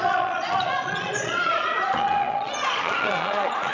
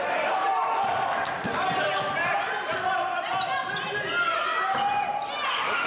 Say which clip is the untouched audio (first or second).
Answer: second